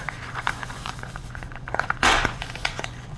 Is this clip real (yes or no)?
no